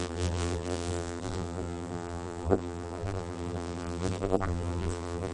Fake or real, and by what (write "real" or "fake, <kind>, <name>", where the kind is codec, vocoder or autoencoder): fake, vocoder, BigVGAN v2